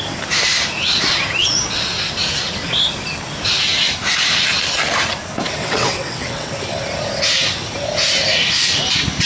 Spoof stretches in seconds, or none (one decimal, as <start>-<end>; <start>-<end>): 5.6-6.5